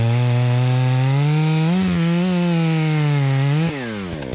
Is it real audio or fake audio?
real